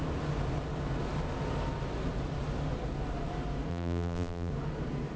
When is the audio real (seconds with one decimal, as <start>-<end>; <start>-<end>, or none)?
0.0-3.7; 4.5-5.2

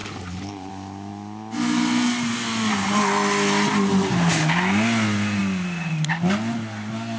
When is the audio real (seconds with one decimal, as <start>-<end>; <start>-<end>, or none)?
0.0-5.4; 5.9-7.2